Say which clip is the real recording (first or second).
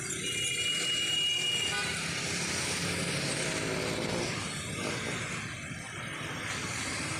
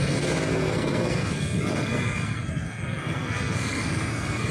first